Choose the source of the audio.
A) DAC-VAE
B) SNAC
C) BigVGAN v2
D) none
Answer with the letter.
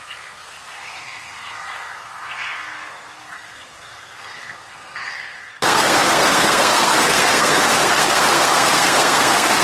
B